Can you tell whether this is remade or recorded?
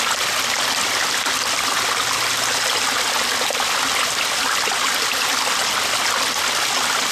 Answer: recorded